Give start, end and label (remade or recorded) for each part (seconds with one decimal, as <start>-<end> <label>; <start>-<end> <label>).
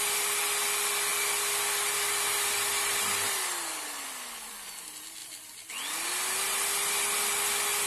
0.0-7.9 recorded